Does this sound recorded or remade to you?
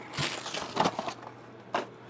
recorded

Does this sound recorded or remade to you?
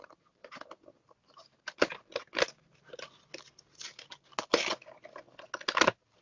recorded